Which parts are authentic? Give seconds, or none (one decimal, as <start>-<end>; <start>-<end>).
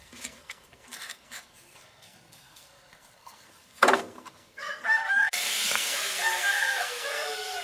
none